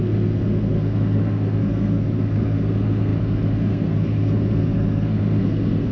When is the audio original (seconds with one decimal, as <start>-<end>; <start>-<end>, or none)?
none

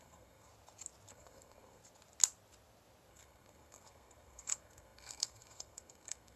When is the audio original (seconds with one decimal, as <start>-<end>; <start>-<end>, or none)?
0.5-1.1; 1.8-3.1

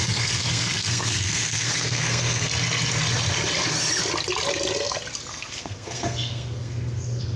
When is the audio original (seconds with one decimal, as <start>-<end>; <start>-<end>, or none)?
2.5-5.3